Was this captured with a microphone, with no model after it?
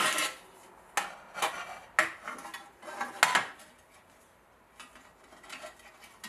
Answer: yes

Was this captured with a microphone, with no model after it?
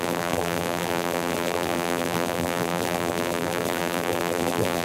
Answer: no